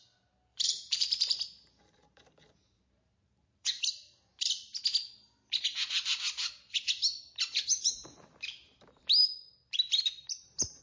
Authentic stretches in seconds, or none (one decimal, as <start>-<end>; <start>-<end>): 0.0-0.5; 3.8-7.7